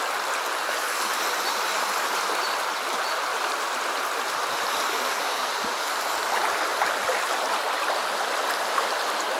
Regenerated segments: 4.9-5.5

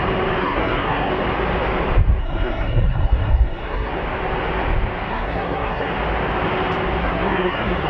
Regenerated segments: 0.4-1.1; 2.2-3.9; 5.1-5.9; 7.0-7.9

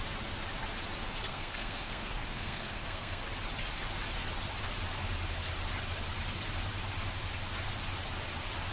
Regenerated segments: 1.3-3.2

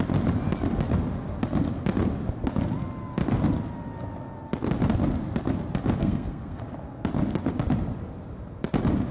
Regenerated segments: 6.0-6.6